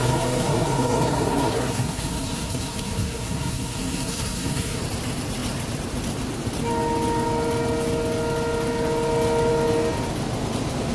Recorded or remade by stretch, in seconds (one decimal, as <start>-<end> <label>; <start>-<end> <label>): 0.0-4.8 remade; 4.8-10.9 recorded